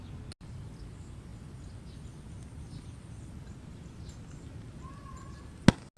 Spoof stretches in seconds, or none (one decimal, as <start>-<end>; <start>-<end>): none